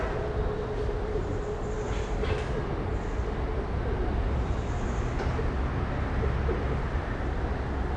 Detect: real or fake real